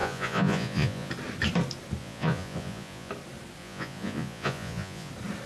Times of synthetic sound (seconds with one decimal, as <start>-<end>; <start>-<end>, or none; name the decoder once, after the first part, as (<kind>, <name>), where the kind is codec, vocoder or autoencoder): 0.0-1.1 (vocoder, Vocos); 2.0-3.1; 3.6-5.1